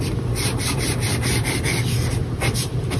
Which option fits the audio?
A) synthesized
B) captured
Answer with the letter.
A